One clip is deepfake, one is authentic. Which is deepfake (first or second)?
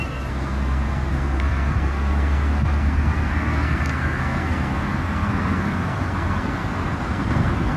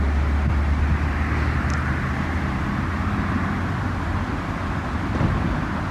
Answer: first